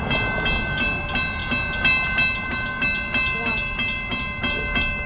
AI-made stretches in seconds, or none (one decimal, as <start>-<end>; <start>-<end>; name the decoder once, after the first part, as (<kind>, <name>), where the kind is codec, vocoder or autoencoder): none